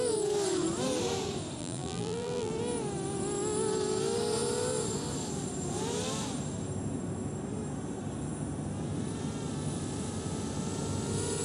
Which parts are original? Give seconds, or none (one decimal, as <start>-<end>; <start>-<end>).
0.0-1.6; 2.5-11.4